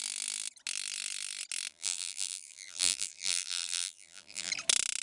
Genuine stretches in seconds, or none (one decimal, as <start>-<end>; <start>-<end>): 0.0-1.7; 4.5-5.0